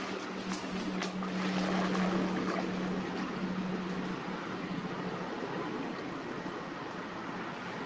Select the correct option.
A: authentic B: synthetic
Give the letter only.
A